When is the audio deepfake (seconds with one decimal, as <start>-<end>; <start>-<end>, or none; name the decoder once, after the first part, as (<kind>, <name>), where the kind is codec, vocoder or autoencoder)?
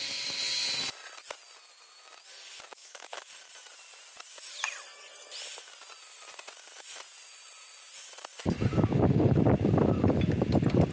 2.8-3.3 (autoencoder, DAC-VAE)